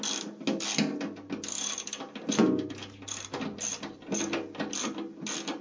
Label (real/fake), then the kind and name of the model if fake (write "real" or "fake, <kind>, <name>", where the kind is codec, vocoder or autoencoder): real